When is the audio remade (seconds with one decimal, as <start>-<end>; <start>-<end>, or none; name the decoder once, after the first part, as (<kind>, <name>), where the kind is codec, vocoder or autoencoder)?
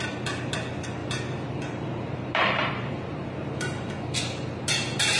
1.0-3.9 (vocoder, BigVGAN v2)